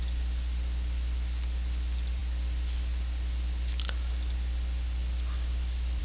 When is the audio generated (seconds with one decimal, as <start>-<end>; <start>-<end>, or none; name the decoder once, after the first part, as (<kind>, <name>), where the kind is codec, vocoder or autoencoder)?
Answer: none